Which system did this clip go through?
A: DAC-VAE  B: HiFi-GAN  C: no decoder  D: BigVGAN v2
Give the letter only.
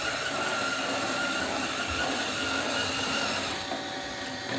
C